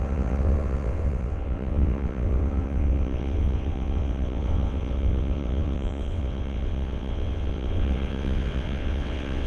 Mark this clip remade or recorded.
remade